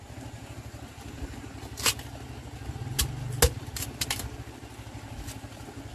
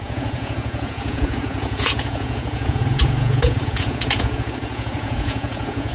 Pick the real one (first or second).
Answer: first